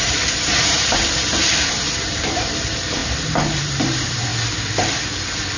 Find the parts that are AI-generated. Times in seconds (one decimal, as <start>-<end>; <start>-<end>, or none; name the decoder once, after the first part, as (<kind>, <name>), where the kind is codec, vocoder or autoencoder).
0.0-4.3 (vocoder, BigVGAN v2)